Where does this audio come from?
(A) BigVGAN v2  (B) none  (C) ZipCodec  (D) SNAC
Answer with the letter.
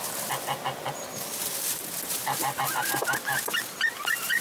B